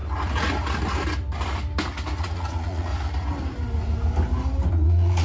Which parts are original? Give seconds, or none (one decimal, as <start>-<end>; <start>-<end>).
0.0-2.2; 2.9-4.7